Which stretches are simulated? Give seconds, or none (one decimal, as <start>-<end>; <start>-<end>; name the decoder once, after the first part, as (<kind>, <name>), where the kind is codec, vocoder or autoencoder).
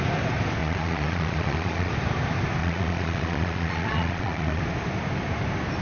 0.6-1.9 (vocoder, Vocos); 2.6-4.6